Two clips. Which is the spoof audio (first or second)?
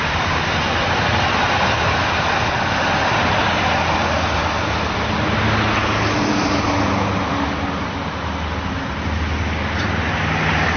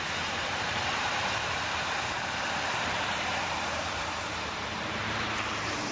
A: second